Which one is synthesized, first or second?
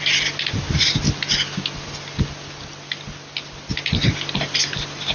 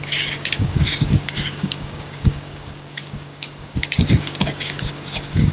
second